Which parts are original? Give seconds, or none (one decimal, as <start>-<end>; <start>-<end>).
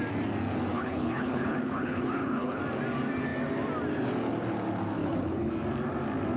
0.0-0.7; 2.6-5.0; 5.5-6.4